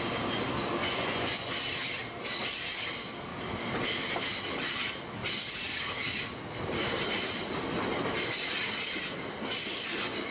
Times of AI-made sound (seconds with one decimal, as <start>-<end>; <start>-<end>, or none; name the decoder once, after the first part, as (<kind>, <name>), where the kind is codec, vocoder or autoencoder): 0.8-1.5 (vocoder, Vocos)